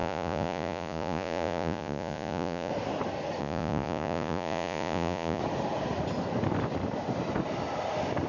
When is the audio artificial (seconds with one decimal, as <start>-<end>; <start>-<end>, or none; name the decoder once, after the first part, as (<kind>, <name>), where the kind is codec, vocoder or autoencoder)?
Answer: 0.0-2.7 (vocoder, Vocos); 3.4-5.4